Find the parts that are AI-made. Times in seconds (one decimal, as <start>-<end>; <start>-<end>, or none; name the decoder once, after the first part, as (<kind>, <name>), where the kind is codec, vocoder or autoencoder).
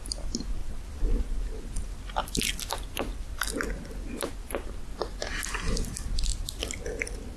0.6-1.2 (vocoder, BigVGAN v2); 3.1-3.7; 6.3-7.4